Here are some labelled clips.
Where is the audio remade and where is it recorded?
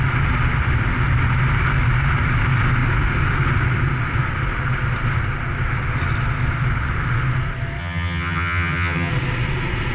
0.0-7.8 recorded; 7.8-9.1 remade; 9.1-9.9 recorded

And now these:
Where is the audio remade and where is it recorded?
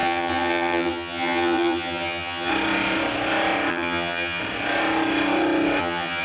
0.0-2.5 remade; 2.5-3.7 recorded; 3.7-4.4 remade; 4.4-5.8 recorded; 5.8-6.2 remade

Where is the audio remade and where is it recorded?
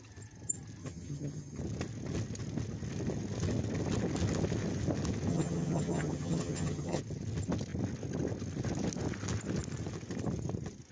0.0-0.8 recorded; 0.8-1.6 remade; 1.6-5.3 recorded; 5.3-7.0 remade; 7.0-10.9 recorded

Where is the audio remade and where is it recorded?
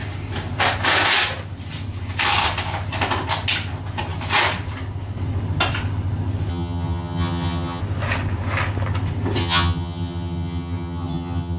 0.0-6.5 recorded; 6.5-7.8 remade; 7.8-9.4 recorded; 9.4-11.6 remade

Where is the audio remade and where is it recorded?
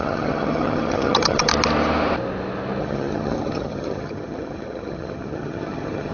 0.0-1.5 remade; 1.5-2.8 recorded; 2.8-6.1 remade